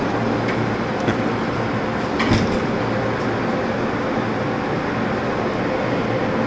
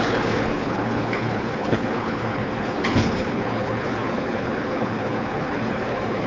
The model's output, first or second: second